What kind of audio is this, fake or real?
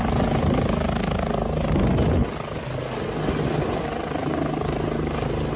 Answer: real